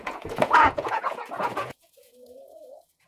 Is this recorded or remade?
remade